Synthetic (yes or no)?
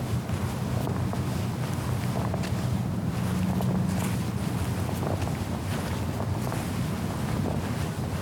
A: no